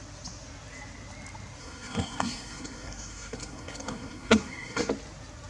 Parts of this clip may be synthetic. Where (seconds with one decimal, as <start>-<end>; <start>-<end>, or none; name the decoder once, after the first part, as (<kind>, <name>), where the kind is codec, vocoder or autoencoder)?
1.6-4.9 (codec, SNAC)